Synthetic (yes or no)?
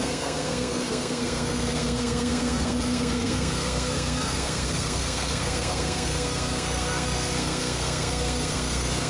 yes